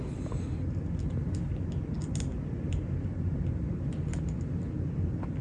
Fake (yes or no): no